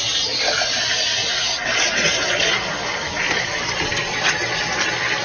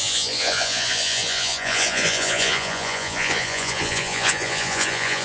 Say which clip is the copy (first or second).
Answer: second